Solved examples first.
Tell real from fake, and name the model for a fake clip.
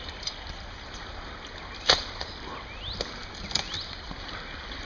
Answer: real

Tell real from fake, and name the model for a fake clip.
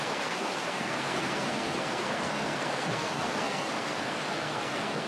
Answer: fake, codec, SNAC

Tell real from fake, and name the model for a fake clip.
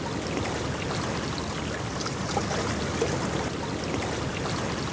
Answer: real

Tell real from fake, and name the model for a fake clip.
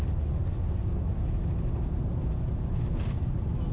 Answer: real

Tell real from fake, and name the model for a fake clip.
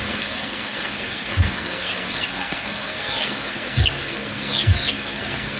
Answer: fake, codec, SNAC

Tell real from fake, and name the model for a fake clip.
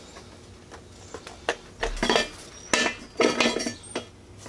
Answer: real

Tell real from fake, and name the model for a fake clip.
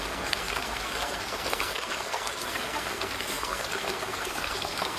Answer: fake, codec, SNAC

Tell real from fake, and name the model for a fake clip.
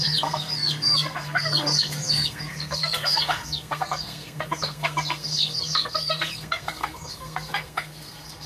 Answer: fake, codec, SNAC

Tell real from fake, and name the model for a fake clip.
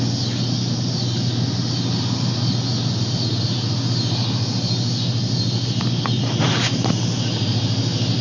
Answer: real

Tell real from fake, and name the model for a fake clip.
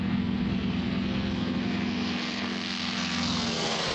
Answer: fake, codec, SNAC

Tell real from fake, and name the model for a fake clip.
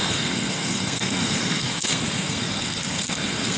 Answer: fake, codec, SNAC